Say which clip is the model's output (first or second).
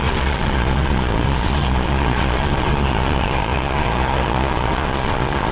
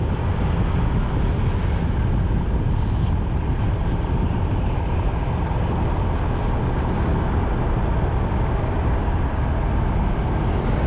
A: first